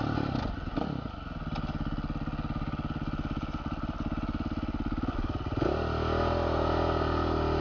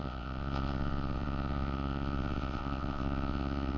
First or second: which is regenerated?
second